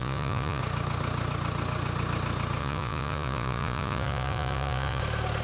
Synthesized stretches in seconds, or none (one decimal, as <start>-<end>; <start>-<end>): 0.0-0.6; 2.6-5.0